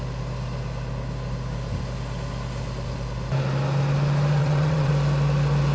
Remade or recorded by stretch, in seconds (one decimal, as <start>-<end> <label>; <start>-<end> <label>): 0.0-4.4 recorded; 4.4-4.9 remade; 4.9-5.7 recorded